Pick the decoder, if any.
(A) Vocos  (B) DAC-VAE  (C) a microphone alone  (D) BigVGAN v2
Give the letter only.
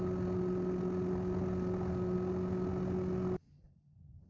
C